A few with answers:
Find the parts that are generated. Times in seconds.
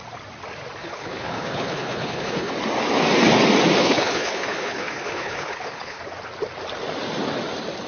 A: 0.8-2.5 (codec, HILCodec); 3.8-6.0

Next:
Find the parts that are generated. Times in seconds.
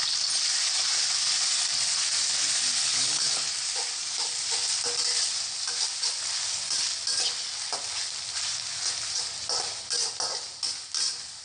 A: 2.8-3.5 (codec, HILCodec)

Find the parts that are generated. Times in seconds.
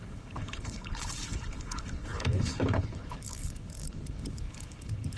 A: 0.0-5.2 (codec, HILCodec)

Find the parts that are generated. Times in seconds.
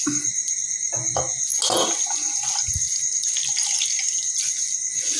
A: none